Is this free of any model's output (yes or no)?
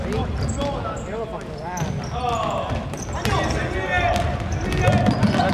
yes